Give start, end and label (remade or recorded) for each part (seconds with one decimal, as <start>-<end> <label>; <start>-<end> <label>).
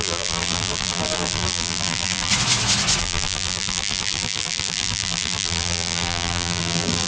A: 0.0-2.3 remade; 2.3-3.0 recorded; 3.0-7.1 remade